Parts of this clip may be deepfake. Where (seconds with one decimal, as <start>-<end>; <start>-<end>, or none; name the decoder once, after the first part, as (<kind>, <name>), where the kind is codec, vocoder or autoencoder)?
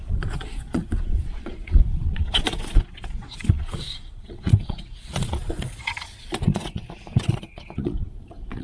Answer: 0.0-8.6 (vocoder, Vocos)